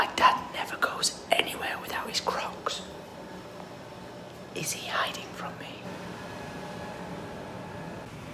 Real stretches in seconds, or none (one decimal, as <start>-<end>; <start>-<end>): 0.0-8.3